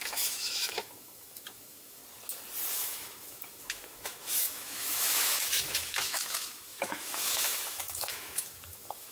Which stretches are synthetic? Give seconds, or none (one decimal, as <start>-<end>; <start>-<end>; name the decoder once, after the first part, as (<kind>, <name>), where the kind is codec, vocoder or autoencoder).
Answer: 0.0-2.0 (autoencoder, DAC-VAE); 2.7-9.1